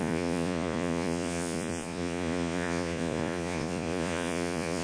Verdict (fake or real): fake